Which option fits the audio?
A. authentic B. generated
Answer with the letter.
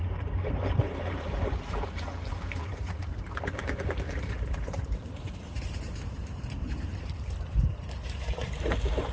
B